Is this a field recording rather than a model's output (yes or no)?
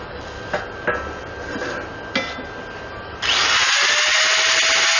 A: yes